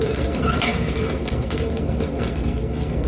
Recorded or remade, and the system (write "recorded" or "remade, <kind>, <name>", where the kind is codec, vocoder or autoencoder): remade, codec, SNAC